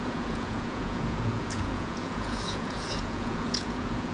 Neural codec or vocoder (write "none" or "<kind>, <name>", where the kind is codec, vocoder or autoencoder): vocoder, Vocos